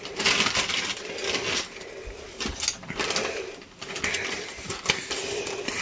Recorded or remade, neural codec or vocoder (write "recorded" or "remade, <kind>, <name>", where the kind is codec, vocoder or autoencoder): recorded